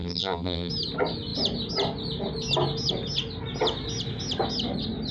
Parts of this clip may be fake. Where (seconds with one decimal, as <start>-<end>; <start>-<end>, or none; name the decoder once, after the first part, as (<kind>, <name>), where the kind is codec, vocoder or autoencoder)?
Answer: 0.0-0.7 (vocoder, BigVGAN v2)